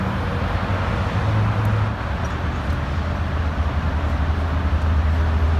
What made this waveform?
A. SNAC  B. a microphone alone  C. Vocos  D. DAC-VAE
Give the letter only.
B